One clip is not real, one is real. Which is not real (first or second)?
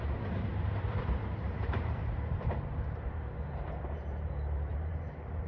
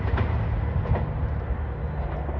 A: first